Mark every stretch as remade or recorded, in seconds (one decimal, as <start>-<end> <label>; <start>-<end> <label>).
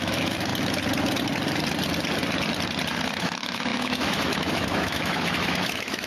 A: 0.0-0.5 remade; 0.5-3.2 recorded; 3.2-6.1 remade